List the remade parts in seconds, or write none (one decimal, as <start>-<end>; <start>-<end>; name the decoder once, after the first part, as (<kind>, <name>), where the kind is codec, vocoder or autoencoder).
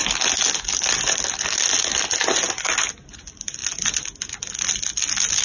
none